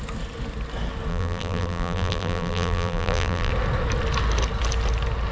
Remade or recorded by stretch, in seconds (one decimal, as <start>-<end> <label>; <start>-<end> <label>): 0.0-1.1 recorded; 1.1-3.5 remade; 3.5-5.3 recorded